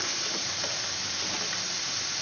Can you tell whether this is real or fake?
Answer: real